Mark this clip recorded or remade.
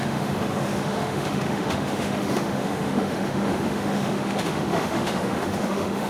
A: remade